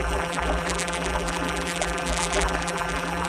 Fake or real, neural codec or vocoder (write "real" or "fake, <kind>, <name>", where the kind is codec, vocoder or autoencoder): fake, vocoder, BigVGAN v2